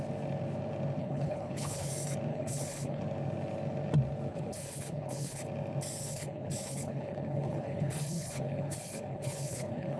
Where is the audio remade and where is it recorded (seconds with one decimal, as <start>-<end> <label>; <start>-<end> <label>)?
0.0-1.0 recorded; 1.0-1.9 remade; 1.9-2.3 recorded; 2.3-3.0 remade; 3.0-4.3 recorded; 4.3-5.4 remade; 5.4-6.0 recorded; 6.0-10.0 remade

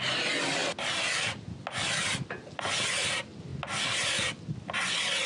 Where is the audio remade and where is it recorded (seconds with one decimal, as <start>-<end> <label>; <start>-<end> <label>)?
0.0-5.3 recorded

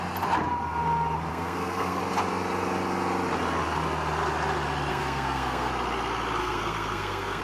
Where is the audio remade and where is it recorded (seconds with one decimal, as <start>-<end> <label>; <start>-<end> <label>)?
0.0-1.3 recorded; 1.3-2.0 remade; 2.0-4.9 recorded; 4.9-5.7 remade; 5.7-6.4 recorded; 6.4-7.4 remade